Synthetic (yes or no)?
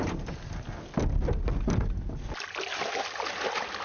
no